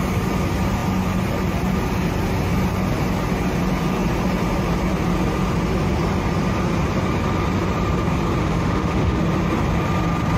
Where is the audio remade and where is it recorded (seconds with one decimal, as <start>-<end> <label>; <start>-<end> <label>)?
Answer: 0.0-8.4 recorded; 8.4-9.2 remade; 9.2-10.4 recorded